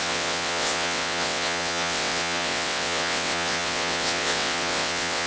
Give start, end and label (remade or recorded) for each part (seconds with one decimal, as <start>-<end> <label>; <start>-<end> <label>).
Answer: 0.0-5.3 remade